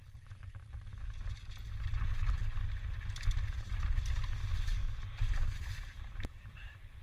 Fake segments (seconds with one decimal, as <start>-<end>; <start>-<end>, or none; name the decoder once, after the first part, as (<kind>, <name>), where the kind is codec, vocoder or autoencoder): 4.8-7.0 (vocoder, BigVGAN v2)